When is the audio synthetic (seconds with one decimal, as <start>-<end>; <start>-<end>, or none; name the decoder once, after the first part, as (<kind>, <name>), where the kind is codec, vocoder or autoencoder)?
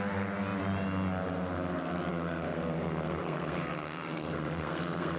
2.1-5.2 (codec, SNAC)